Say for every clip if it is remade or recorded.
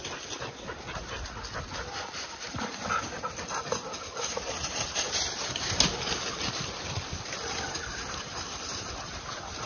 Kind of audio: recorded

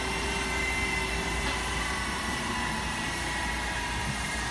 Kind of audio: remade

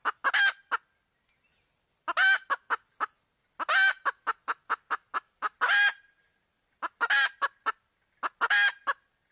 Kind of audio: recorded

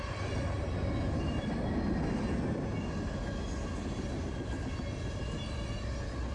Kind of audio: recorded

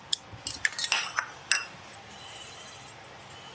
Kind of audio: recorded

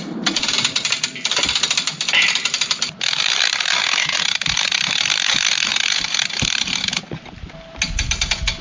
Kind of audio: recorded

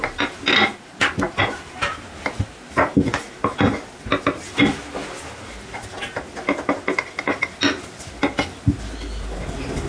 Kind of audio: recorded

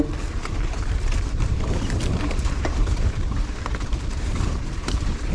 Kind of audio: remade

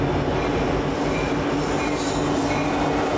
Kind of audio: recorded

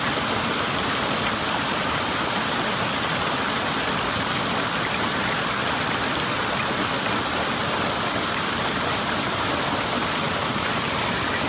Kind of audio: recorded